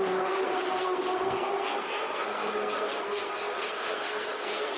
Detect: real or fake fake